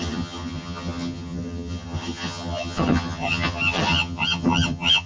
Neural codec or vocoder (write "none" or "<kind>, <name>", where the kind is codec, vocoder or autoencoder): vocoder, HiFi-GAN